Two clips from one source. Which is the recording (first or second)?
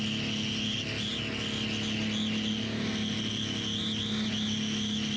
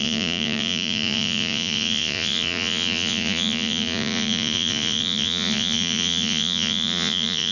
first